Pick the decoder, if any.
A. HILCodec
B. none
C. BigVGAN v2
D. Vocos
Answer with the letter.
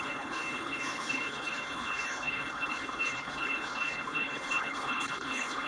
A